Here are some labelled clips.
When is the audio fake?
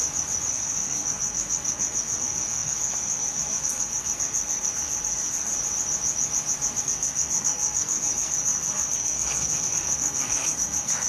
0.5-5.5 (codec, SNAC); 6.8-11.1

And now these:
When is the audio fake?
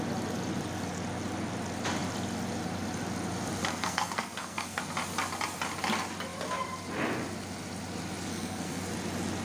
3.6-4.8 (codec, SNAC); 8.3-8.8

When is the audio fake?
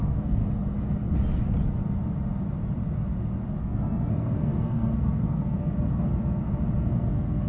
0.0-0.4 (codec, SNAC); 3.6-6.1; 6.8-7.5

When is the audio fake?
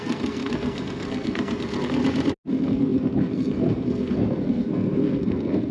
0.0-2.0 (codec, SNAC); 2.5-5.7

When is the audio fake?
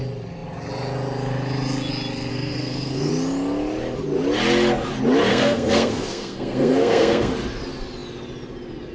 2.3-3.1 (codec, SNAC); 5.3-7.3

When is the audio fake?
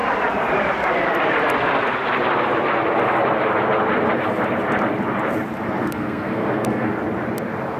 5.8-6.9 (codec, SNAC)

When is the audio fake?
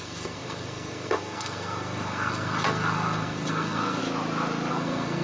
0.0-4.0 (codec, SNAC); 4.7-5.2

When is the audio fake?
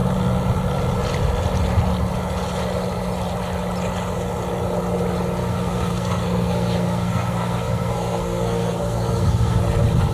5.4-9.6 (codec, SNAC)